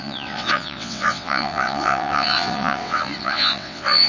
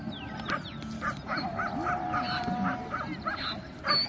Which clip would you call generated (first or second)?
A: first